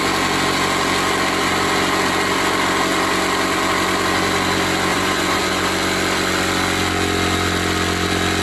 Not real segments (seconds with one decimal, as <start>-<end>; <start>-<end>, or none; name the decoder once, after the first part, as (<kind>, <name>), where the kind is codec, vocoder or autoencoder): 4.9-5.6 (vocoder, Vocos)